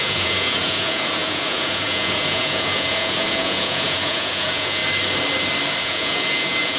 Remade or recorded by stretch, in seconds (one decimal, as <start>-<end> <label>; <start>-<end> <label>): 0.0-4.8 remade; 4.8-5.8 recorded; 5.8-6.8 remade